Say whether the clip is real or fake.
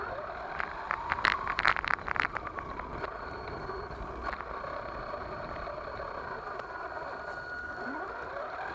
real